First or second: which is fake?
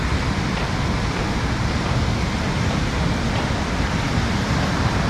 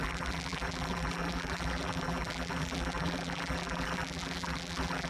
second